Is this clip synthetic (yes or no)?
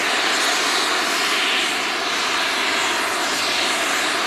no